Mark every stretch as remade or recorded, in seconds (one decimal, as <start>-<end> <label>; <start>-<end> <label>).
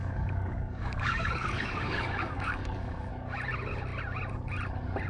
0.0-3.1 remade; 3.1-5.1 recorded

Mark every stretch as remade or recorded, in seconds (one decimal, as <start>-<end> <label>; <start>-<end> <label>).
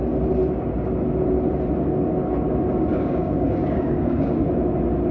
0.0-2.9 recorded; 2.9-4.5 remade; 4.5-5.1 recorded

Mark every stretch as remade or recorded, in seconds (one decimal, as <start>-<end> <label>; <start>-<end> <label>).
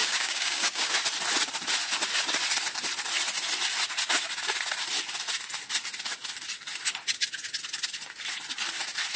0.0-0.9 remade; 0.9-9.2 recorded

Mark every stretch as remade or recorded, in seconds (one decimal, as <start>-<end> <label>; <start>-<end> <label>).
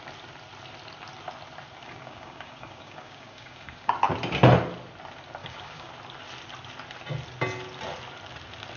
0.0-1.8 recorded; 1.8-3.9 remade; 3.9-5.4 recorded; 5.4-5.9 remade; 5.9-8.8 recorded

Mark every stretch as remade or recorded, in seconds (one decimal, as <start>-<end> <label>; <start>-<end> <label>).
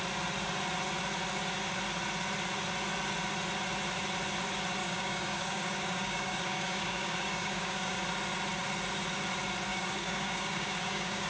0.0-4.8 recorded; 4.8-8.0 remade; 8.0-9.7 recorded; 9.7-11.3 remade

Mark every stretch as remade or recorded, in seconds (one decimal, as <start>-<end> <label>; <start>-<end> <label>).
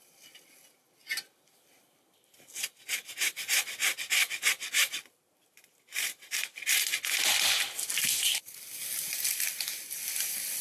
0.0-10.6 recorded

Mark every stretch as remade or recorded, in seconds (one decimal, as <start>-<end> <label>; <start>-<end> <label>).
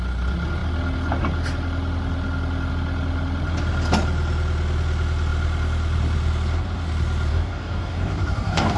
0.0-7.3 recorded; 7.3-8.8 remade